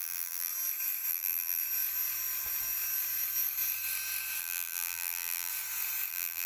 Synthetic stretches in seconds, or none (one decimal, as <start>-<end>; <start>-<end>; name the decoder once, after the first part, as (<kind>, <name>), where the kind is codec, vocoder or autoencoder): 0.0-0.5 (vocoder, BigVGAN v2); 1.1-1.6; 4.4-5.5; 6.1-6.5